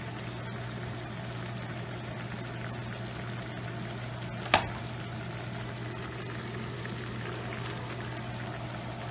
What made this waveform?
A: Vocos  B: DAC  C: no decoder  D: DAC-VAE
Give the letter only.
C